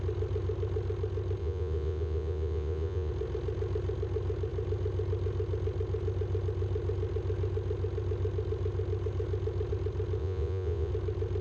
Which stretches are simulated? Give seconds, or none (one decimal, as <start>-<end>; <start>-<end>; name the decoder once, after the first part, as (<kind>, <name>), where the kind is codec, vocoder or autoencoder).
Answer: 1.4-3.1 (vocoder, Vocos); 10.2-10.9